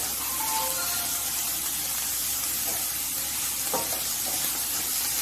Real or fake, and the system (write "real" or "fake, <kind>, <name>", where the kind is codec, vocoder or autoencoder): real